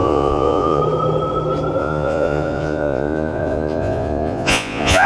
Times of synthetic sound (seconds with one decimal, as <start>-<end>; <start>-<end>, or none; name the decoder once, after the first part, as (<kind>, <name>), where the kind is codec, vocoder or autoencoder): 0.0-0.8 (vocoder, Vocos); 1.8-5.1